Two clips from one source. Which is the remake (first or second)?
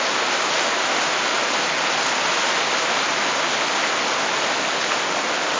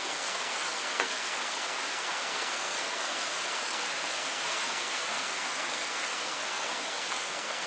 second